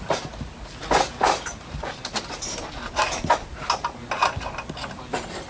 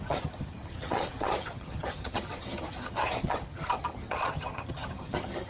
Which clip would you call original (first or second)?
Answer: first